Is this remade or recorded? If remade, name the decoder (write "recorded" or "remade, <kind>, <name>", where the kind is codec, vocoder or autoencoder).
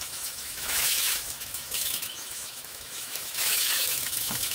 remade, autoencoder, DAC-VAE